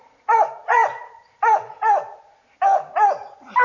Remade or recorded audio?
recorded